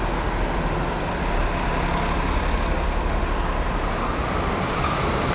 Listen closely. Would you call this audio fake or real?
real